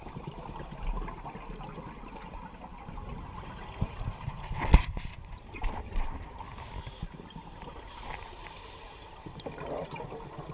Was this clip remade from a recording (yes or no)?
no